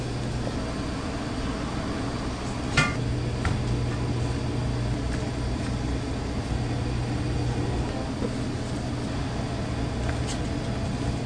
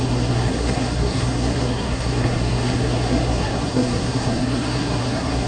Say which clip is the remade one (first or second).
second